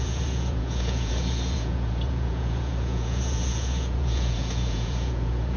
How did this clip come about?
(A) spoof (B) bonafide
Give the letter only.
A